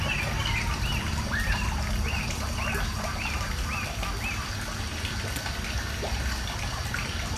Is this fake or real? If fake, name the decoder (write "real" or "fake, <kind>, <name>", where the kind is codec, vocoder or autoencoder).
real